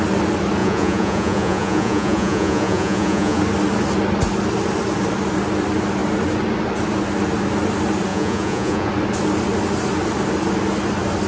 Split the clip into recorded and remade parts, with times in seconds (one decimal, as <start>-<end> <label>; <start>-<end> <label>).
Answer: 0.0-0.6 recorded; 0.6-3.4 remade; 3.4-8.1 recorded; 8.1-8.9 remade; 8.9-11.3 recorded